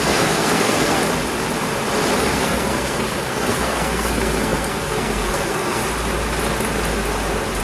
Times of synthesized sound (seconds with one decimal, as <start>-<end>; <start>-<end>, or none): 0.0-1.0; 2.2-5.8